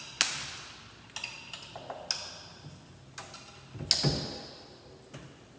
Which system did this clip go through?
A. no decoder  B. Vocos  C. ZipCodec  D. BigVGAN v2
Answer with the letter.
A